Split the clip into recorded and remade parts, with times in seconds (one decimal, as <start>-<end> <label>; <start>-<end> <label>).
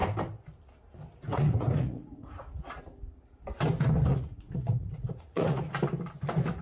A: 0.0-1.3 recorded; 1.3-2.8 remade; 2.8-4.1 recorded; 4.1-5.7 remade; 5.7-6.6 recorded